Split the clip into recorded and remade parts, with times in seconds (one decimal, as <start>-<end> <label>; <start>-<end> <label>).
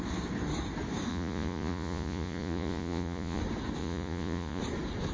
0.0-1.1 recorded; 1.1-3.4 remade; 3.4-3.8 recorded; 3.8-4.6 remade; 4.6-5.1 recorded